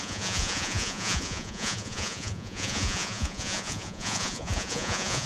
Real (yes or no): no